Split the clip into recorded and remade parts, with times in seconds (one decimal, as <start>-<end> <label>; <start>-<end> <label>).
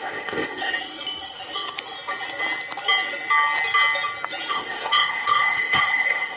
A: 0.0-0.7 remade; 0.7-4.5 recorded; 4.5-6.4 remade